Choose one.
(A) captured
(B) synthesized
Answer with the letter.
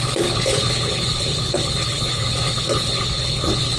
B